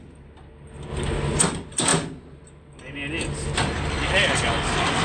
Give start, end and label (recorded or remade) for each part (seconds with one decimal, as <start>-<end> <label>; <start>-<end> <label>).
0.0-5.0 recorded